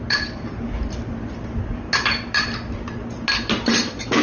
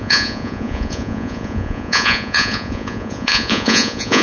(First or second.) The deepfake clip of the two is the second